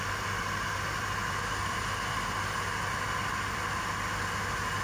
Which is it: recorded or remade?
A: recorded